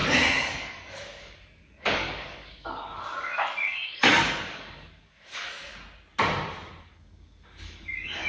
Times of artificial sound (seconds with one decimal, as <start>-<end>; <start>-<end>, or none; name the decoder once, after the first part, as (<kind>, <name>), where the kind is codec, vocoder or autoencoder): 0.5-5.7 (codec, DAC); 6.8-8.3